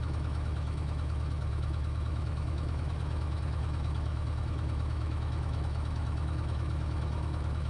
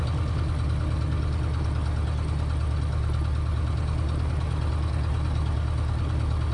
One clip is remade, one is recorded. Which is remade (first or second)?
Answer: first